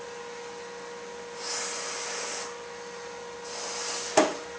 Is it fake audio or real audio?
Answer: real